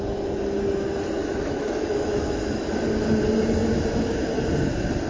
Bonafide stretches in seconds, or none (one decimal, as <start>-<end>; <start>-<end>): 0.0-1.2; 2.6-5.1